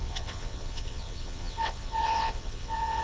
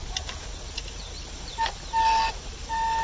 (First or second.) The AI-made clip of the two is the first